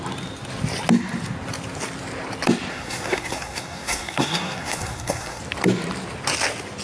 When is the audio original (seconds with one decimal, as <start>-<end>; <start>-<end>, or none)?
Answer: 0.0-2.7; 5.4-6.8